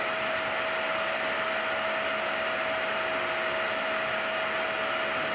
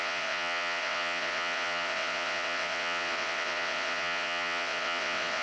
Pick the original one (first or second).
first